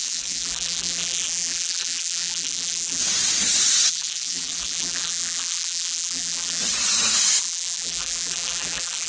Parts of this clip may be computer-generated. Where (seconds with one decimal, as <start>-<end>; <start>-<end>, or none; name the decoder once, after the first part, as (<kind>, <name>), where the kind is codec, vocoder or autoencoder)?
0.0-3.0 (vocoder, BigVGAN v2); 3.9-6.6; 7.4-9.1

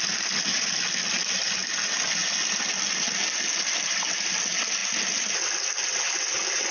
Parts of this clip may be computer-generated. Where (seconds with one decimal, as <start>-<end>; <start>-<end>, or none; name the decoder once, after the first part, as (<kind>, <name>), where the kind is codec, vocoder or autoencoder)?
none

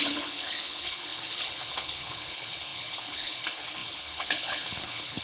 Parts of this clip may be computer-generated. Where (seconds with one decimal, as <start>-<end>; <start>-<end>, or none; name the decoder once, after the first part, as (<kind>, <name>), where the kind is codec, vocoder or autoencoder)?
0.0-5.2 (codec, HILCodec)

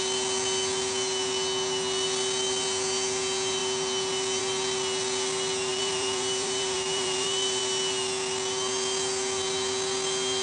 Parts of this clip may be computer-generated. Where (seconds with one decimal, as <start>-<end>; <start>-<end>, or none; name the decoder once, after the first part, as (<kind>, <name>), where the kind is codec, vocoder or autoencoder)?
5.7-7.6 (vocoder, BigVGAN v2)

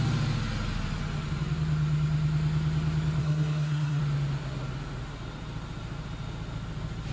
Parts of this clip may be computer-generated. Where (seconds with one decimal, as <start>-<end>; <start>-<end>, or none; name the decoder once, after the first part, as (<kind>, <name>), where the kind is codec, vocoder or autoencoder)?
3.2-4.0 (codec, SNAC)

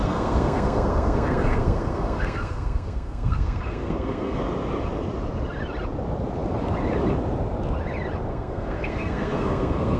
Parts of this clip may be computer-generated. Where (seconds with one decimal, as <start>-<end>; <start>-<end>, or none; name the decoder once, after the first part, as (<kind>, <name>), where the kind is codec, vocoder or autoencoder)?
0.0-4.4 (codec, SNAC); 8.3-10.0

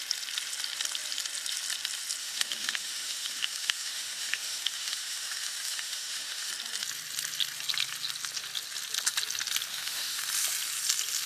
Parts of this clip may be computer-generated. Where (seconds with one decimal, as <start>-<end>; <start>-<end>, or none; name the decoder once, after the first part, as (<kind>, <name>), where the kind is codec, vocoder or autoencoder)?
2.2-6.5 (autoencoder, DAC-VAE); 9.7-10.2